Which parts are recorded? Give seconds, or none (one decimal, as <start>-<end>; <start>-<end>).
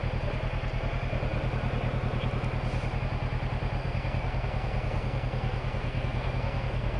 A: 0.0-3.8